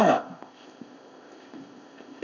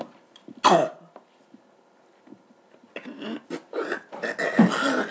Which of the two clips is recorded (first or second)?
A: second